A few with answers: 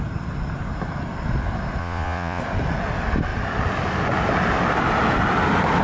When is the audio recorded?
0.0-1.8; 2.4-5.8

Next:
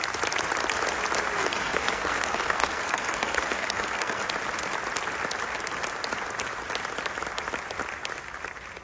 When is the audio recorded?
0.0-1.4; 4.2-8.8

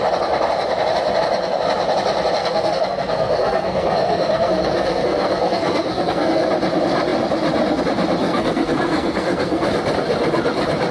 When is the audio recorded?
0.0-2.4; 6.5-8.2; 9.7-10.9

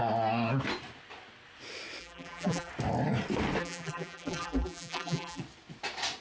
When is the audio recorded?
0.0-2.0; 2.7-3.6; 5.4-6.2

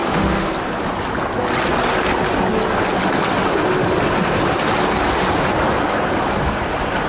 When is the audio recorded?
0.5-7.1

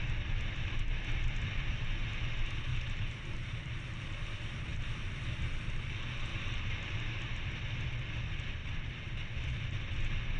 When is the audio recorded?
0.0-2.7; 4.0-6.3; 7.3-10.4